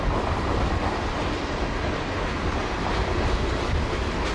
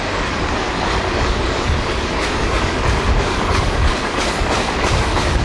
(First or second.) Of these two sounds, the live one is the first